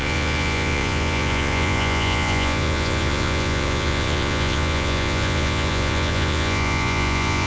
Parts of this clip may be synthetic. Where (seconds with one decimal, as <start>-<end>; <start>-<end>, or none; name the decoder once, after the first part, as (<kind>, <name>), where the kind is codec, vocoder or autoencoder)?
0.0-7.5 (vocoder, Vocos)

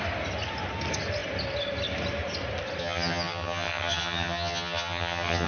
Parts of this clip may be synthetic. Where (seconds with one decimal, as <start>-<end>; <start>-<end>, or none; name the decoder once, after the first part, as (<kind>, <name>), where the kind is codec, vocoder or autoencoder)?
2.8-5.5 (vocoder, HiFi-GAN)

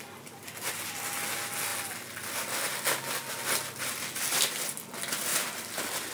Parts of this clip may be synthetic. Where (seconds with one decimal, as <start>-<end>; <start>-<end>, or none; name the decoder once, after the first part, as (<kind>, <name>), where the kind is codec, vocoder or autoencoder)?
none

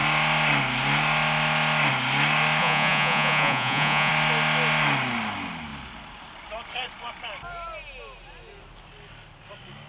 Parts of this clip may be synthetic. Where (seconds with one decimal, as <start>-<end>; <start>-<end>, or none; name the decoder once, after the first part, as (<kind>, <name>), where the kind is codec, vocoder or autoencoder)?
2.6-4.1 (vocoder, Vocos)

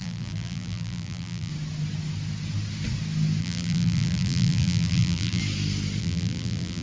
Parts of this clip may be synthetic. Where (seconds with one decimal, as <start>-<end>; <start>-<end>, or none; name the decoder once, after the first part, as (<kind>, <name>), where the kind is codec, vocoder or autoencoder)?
0.0-1.5 (vocoder, BigVGAN v2); 3.4-5.4; 6.0-6.8

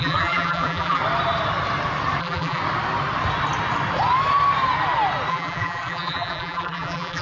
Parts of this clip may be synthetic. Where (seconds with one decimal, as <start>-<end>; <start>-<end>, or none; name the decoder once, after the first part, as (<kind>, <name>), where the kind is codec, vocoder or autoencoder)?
0.0-1.0 (vocoder, BigVGAN v2); 2.2-2.6; 5.3-7.2

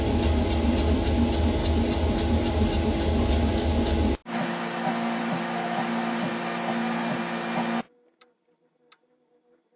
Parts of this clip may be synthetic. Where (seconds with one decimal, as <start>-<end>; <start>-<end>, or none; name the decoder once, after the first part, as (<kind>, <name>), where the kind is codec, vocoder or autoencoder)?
none